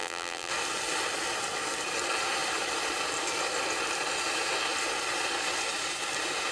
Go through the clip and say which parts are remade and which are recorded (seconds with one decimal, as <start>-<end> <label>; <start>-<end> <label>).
0.0-0.5 remade; 0.5-6.5 recorded